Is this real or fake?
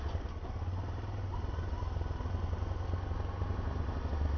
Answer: real